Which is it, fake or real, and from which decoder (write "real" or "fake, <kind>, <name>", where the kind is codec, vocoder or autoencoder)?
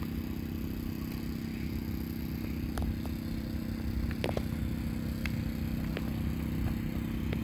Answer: real